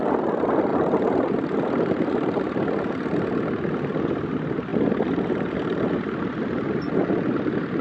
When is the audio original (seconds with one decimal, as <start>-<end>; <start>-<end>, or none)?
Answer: 0.0-0.7; 2.4-7.8

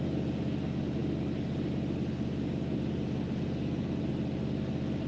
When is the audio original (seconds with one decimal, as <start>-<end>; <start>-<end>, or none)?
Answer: 0.0-5.1

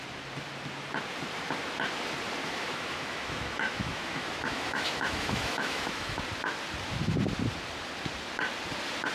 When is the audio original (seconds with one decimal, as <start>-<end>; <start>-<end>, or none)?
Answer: 0.0-2.4; 6.2-9.1

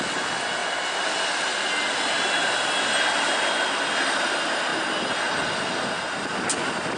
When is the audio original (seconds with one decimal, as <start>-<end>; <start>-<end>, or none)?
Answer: 0.0-7.0

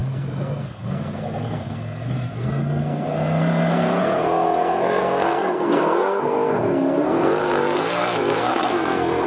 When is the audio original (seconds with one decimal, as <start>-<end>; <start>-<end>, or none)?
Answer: none

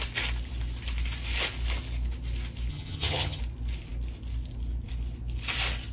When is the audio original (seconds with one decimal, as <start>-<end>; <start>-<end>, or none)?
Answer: 0.0-2.7; 3.4-5.9

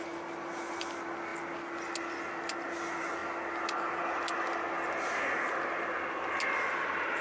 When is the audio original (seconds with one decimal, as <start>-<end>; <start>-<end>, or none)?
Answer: 0.0-7.2

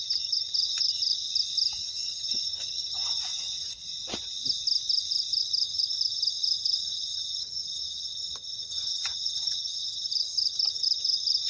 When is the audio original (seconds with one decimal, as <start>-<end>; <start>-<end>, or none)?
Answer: 1.2-1.8; 3.2-5.4